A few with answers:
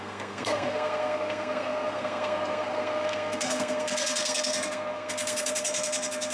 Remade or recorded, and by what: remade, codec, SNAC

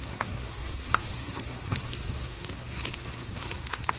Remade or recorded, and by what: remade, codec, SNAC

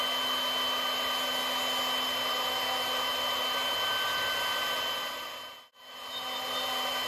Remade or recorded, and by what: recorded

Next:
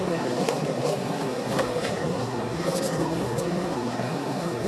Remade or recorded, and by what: remade, codec, SNAC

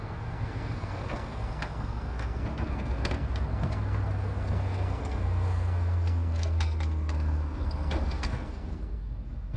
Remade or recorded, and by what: remade, codec, SNAC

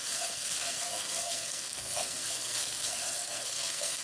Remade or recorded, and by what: remade, codec, SNAC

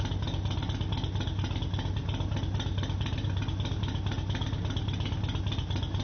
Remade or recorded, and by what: recorded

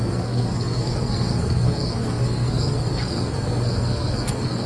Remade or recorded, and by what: remade, codec, SNAC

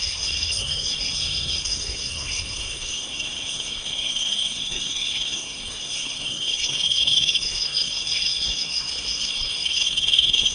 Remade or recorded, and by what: remade, codec, SNAC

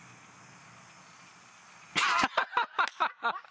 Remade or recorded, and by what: recorded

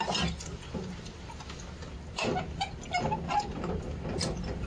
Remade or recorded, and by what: recorded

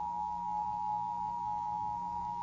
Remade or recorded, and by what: remade, codec, SNAC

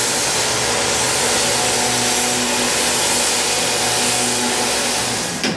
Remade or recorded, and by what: recorded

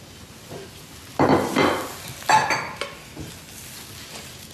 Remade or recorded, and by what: recorded